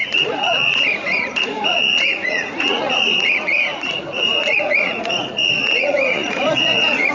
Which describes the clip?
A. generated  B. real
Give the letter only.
A